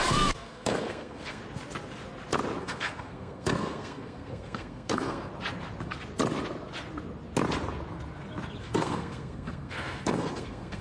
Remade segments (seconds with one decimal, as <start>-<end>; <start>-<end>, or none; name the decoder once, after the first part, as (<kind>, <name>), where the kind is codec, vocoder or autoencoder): 0.0-1.4 (codec, SNAC); 2.6-5.3; 8.6-10.8